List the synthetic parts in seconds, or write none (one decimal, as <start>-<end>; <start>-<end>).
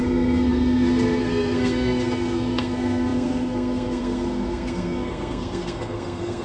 0.0-6.4